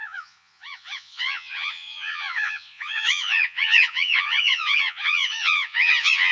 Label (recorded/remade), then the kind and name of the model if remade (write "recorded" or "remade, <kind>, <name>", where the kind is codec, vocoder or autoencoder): remade, vocoder, Vocos